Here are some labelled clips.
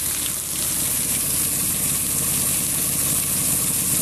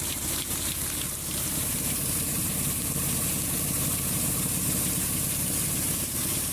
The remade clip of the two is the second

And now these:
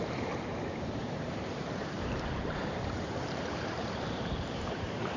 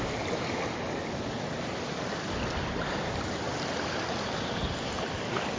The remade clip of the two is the first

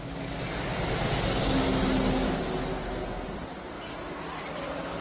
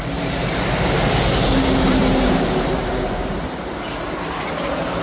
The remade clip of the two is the second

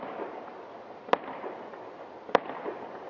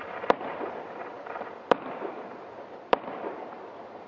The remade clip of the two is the second